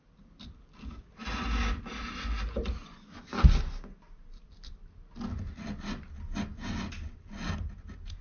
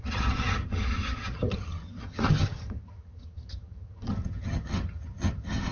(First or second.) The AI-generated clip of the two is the second